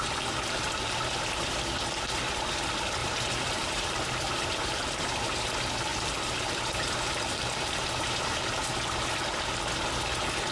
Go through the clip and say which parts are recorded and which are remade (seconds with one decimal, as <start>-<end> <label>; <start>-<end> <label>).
0.0-3.0 recorded; 3.0-5.4 remade; 5.4-5.9 recorded; 5.9-8.6 remade; 8.6-10.5 recorded